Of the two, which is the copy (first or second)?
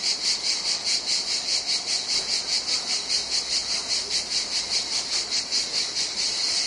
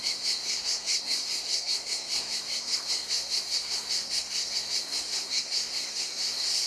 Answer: second